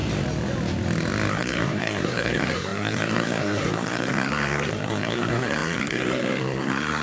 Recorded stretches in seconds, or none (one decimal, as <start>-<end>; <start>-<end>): 0.0-1.3